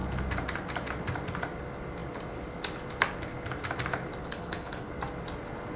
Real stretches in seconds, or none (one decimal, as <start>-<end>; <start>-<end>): 0.0-4.2; 4.9-5.8